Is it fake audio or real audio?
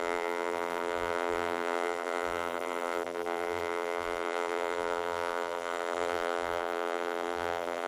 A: fake